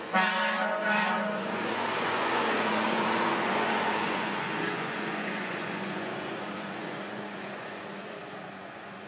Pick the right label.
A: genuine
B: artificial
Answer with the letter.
B